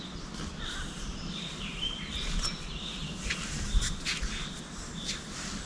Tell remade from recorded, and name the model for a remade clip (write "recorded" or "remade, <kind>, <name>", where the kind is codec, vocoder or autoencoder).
recorded